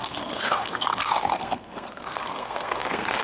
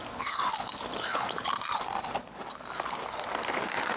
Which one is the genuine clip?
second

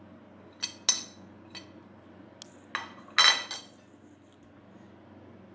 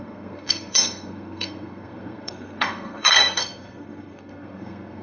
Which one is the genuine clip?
first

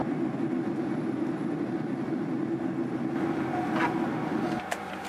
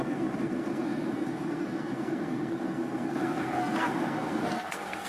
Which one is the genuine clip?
first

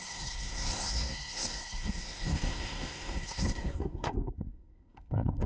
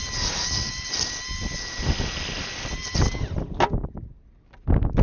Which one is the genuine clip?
second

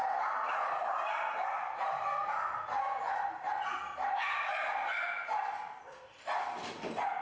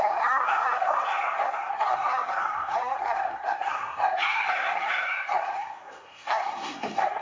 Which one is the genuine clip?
first